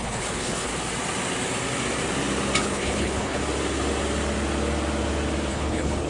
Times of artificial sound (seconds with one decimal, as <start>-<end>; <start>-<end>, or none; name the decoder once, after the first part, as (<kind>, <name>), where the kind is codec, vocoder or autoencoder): 0.0-0.7 (codec, HILCodec); 2.6-3.4; 5.5-6.1

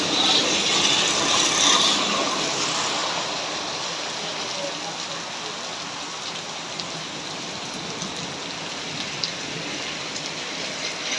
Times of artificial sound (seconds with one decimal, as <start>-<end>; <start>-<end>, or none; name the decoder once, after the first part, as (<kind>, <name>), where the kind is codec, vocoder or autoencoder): none